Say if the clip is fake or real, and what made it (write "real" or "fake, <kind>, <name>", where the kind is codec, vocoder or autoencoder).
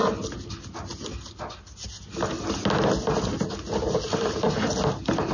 real